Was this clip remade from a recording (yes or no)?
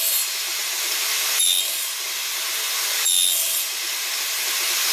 no